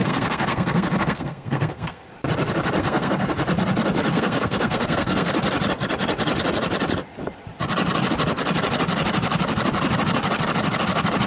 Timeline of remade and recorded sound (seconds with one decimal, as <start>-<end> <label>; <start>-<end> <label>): 0.0-2.1 remade; 2.1-2.8 recorded; 2.8-3.3 remade; 3.3-4.1 recorded; 4.1-5.3 remade; 5.3-11.3 recorded